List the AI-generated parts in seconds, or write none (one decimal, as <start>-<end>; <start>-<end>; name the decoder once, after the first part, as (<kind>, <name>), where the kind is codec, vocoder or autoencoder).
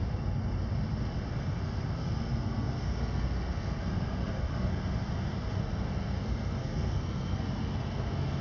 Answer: 1.3-4.8 (codec, SNAC); 5.6-8.4